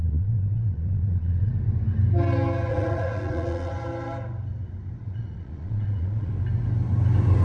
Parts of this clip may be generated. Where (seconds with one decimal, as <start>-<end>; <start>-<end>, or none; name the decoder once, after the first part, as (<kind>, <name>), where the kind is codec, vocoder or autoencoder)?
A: 0.0-1.5 (vocoder, Vocos); 2.7-3.7; 5.0-6.3